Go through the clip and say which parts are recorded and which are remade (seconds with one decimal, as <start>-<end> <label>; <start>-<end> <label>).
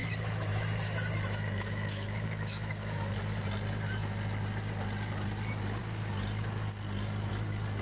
0.0-3.2 remade; 3.2-7.8 recorded